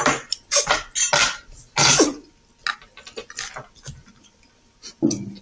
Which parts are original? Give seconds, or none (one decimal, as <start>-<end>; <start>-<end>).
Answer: 0.0-5.4